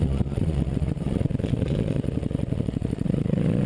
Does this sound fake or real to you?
fake